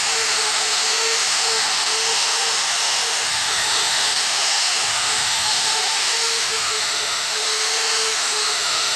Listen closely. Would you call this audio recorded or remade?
remade